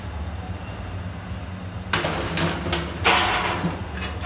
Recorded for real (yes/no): yes